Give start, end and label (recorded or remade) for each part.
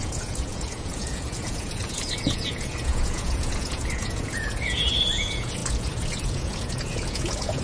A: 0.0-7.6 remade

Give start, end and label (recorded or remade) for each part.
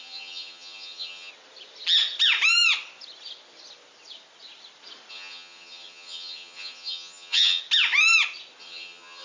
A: 0.0-1.3 remade; 1.3-5.1 recorded; 5.1-7.6 remade; 7.6-8.6 recorded; 8.6-9.2 remade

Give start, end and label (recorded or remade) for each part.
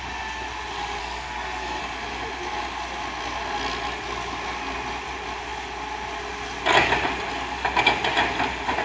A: 0.0-1.0 recorded; 1.0-1.8 remade; 1.8-8.8 recorded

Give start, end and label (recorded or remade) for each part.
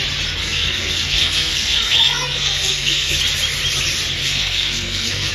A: 0.0-0.4 recorded; 0.4-3.2 remade; 3.2-4.2 recorded; 4.2-5.3 remade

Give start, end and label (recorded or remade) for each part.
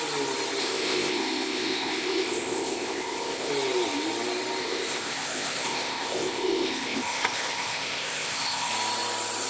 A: 0.0-0.6 recorded; 0.6-3.5 remade; 3.5-4.6 recorded; 4.6-8.7 remade; 8.7-9.5 recorded